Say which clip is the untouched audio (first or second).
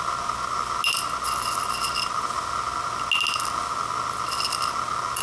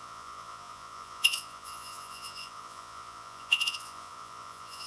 first